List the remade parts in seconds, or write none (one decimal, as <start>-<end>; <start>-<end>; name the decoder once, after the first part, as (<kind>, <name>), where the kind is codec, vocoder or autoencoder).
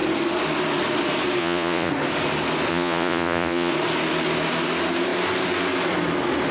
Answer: 1.4-1.9 (vocoder, Vocos); 2.7-3.7